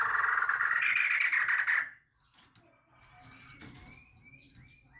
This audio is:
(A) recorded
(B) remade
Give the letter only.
A